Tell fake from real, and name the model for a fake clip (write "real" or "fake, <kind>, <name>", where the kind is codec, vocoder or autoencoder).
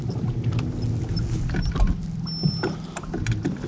real